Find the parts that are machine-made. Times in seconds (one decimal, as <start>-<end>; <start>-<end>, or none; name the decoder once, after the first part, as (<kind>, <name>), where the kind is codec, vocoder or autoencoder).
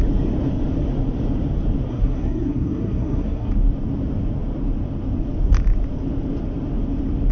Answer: 1.9-3.5 (codec, SNAC)